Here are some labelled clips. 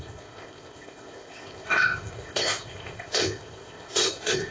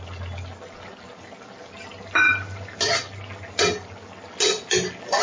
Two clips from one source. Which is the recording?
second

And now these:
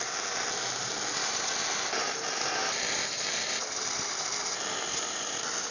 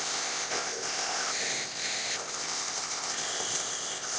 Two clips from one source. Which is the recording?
first